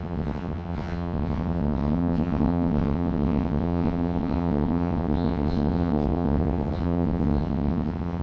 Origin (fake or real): fake